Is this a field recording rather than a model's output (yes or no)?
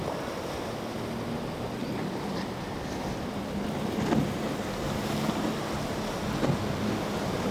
yes